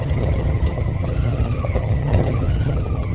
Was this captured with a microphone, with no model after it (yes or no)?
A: no